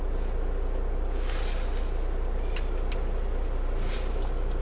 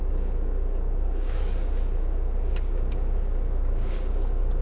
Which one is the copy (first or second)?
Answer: second